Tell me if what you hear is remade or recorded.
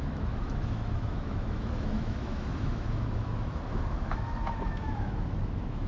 remade